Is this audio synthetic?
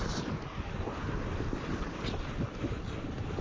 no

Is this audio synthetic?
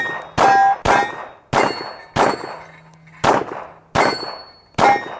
no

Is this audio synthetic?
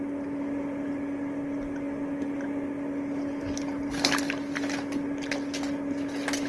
no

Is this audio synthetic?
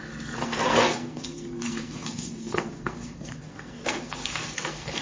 yes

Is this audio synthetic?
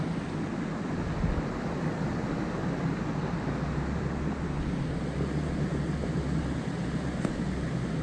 no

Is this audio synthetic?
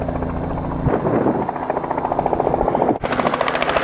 no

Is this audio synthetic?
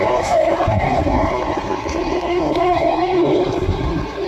yes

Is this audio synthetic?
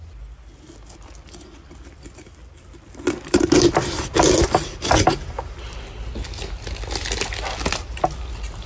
no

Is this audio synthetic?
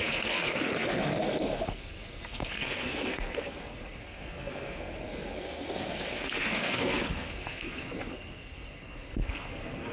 yes